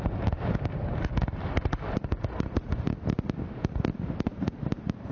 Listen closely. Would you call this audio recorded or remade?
remade